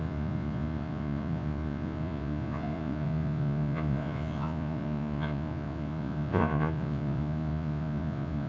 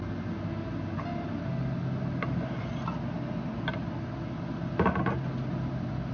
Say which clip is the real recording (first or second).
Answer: second